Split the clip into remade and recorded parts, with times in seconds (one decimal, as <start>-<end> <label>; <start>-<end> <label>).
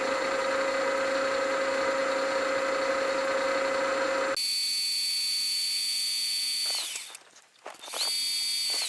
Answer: 0.0-8.9 recorded